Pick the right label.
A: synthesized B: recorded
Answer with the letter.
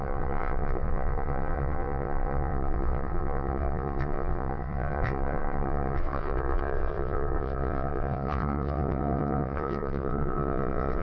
A